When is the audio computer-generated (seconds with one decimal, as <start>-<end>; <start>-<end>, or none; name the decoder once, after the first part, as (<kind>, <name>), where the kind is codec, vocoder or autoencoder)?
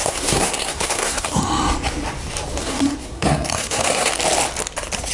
0.0-1.4 (codec, SNAC); 2.6-4.1